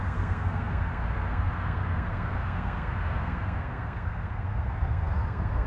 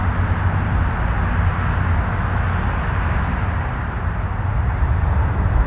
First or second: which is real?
second